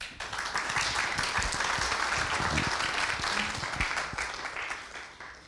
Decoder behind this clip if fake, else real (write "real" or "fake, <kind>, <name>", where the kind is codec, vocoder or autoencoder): real